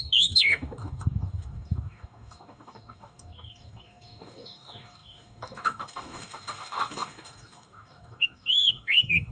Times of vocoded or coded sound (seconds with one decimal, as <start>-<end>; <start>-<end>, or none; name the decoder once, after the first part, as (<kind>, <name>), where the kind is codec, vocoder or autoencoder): 0.0-9.3 (codec, DAC)